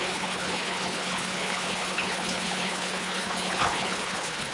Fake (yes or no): yes